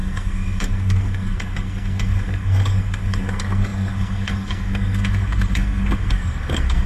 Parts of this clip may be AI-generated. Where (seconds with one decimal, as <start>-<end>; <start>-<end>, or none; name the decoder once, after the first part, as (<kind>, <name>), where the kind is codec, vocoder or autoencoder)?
0.0-6.9 (codec, SNAC)